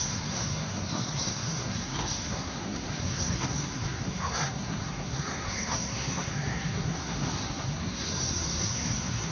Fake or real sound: fake